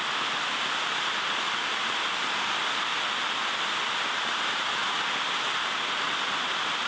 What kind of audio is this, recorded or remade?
remade